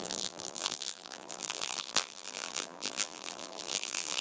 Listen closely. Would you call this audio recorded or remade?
remade